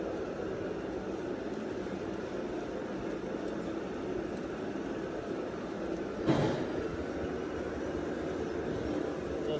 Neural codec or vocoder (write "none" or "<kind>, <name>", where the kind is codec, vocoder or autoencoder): none